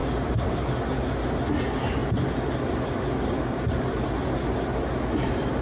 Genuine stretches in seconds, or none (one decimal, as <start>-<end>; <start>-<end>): 0.0-5.6